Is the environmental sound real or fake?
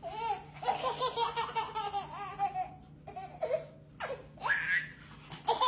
real